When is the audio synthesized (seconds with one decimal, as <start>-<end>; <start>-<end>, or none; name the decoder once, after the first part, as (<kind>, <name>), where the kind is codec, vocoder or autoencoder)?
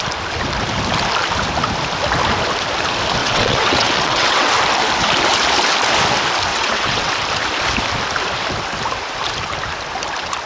3.2-4.5 (vocoder, WaveNeXt); 6.5-7.1